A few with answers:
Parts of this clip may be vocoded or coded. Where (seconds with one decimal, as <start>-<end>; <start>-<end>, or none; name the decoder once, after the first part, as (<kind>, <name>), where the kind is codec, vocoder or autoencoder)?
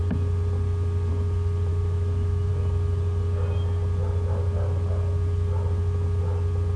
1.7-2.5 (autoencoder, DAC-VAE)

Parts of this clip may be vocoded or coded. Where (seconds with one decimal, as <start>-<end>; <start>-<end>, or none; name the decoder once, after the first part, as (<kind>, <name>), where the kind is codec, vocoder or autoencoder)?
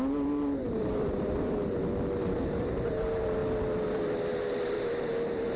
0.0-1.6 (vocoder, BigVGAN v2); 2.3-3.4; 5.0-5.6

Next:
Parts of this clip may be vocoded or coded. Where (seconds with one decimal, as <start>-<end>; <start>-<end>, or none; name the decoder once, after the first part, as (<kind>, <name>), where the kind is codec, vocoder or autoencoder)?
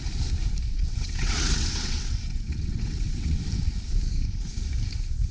0.7-3.4 (vocoder, WaveNeXt)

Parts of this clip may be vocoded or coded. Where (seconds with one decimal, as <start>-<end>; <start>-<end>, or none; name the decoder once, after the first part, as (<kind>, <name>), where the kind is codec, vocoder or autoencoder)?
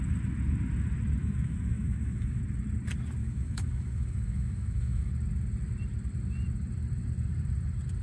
1.2-2.4 (autoencoder, DAC-VAE); 3.2-5.1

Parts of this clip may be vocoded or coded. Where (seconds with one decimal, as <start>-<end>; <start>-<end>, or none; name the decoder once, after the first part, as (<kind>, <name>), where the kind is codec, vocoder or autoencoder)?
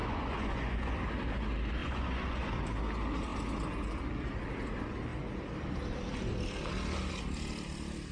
0.0-0.9 (vocoder, Vocos); 1.8-2.5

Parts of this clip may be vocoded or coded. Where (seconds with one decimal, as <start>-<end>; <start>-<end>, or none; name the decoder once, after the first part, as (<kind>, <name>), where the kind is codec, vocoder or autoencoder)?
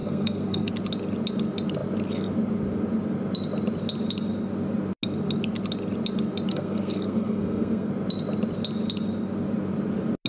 0.0-0.7 (codec, SNAC); 6.5-7.9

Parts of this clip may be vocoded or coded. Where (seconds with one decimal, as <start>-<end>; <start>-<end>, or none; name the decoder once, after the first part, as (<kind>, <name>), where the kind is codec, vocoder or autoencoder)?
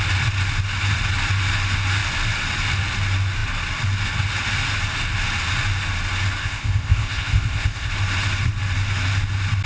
6.4-7.9 (codec, ZipCodec)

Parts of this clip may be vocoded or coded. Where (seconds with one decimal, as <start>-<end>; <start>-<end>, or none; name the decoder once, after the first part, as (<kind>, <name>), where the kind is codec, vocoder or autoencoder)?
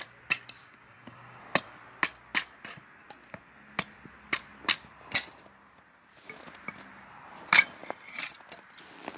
0.6-1.4 (codec, DAC)